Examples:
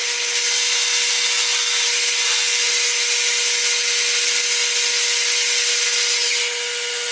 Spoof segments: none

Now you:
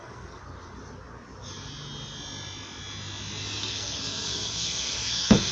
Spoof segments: 0.0-0.4 (codec, SNAC); 3.6-5.5

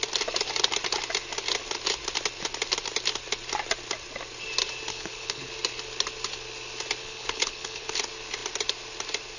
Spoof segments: 4.9-5.5 (codec, HILCodec); 7.0-7.9

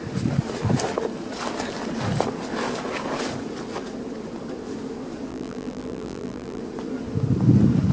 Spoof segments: 5.3-6.6 (vocoder, BigVGAN v2)

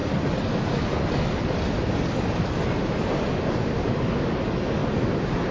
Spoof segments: none